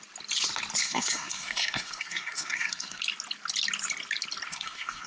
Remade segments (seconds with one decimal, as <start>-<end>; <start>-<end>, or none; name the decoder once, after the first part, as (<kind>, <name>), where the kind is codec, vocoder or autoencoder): 0.8-3.0 (codec, SNAC); 4.5-5.1